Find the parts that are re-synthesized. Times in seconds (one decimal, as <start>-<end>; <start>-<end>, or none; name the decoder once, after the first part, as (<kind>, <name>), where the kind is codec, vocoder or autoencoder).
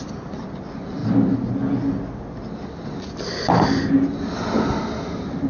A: none